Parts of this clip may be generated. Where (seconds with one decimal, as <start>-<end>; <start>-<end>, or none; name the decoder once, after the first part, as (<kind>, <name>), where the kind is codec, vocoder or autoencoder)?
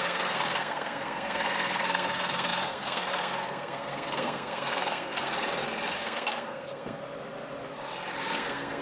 0.0-5.3 (codec, SNAC); 5.9-7.0; 8.2-8.8